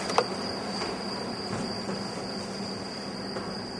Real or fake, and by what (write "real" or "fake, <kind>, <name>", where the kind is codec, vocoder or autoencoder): real